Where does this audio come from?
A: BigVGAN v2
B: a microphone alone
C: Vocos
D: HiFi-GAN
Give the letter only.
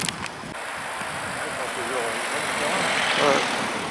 B